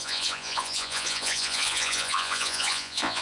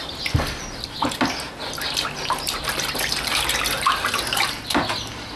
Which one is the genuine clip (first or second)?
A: second